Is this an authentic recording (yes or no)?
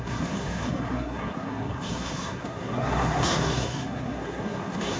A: no